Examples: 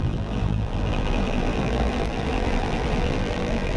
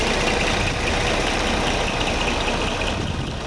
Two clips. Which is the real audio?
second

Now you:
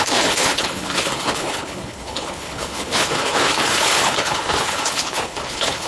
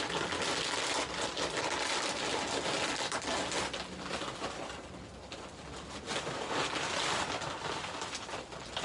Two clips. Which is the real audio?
second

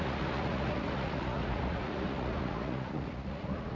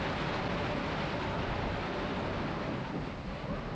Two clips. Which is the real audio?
second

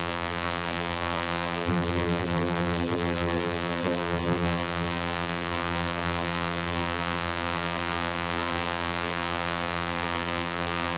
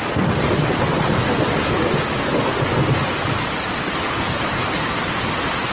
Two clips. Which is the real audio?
second